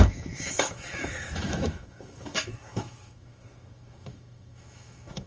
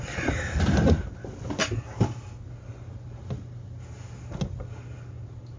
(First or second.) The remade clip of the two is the first